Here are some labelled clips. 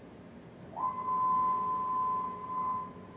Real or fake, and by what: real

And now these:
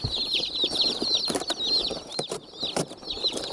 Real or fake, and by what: fake, vocoder, BigVGAN v2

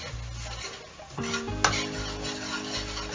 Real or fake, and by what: real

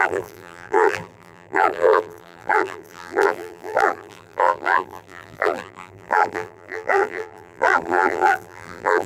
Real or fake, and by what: fake, vocoder, BigVGAN v2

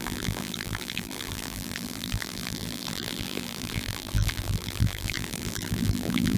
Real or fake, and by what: fake, vocoder, BigVGAN v2